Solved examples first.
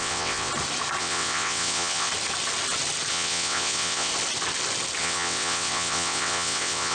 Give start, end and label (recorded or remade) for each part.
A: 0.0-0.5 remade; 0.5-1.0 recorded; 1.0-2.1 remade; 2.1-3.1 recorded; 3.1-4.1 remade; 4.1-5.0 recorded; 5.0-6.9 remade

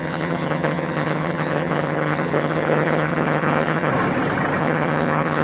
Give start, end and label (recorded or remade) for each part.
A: 0.0-3.9 remade; 3.9-4.6 recorded; 4.6-5.4 remade

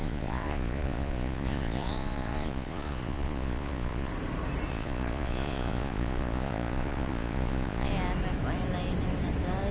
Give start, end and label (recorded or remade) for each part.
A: 0.0-4.1 remade; 4.1-4.7 recorded; 4.7-7.9 remade; 7.9-9.7 recorded

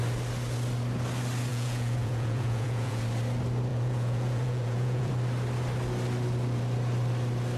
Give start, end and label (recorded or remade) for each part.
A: 0.0-1.5 recorded; 1.5-3.0 remade; 3.0-3.7 recorded; 3.7-5.1 remade; 5.1-7.6 recorded

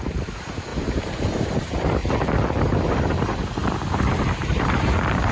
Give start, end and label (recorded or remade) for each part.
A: 0.0-2.0 remade; 2.0-2.6 recorded; 2.6-5.3 remade